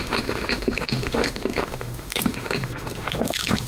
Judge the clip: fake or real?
fake